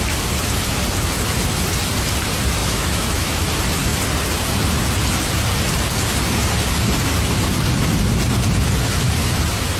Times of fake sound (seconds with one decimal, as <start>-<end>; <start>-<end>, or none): 2.6-3.4